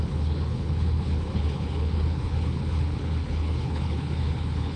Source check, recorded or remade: remade